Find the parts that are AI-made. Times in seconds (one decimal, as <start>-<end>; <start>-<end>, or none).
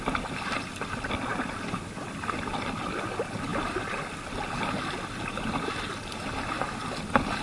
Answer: none